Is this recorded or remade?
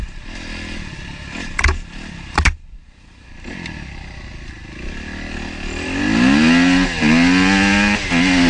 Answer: recorded